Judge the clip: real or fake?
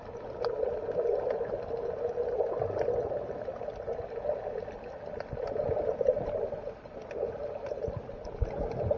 real